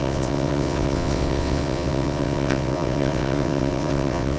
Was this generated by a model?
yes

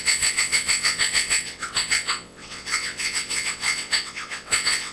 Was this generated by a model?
yes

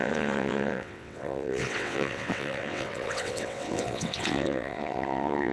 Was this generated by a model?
yes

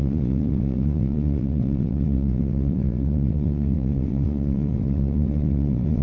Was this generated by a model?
yes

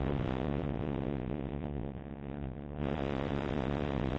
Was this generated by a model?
yes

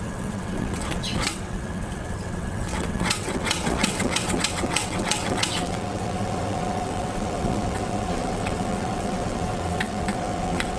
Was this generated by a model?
yes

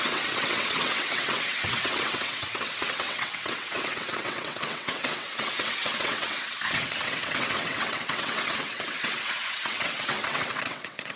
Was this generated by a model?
yes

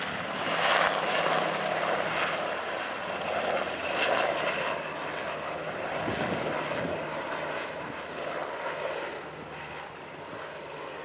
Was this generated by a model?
no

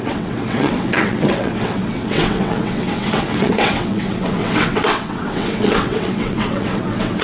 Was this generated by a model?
yes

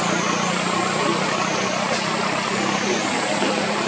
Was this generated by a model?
no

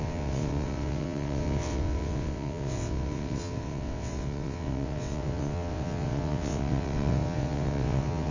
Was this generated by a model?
yes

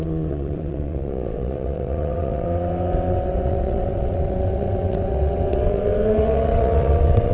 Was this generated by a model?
yes